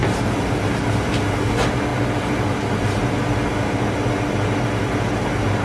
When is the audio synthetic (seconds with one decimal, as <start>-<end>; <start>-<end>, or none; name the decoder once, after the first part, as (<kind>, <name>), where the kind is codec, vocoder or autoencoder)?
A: none